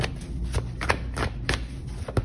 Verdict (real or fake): real